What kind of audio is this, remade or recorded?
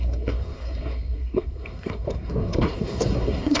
remade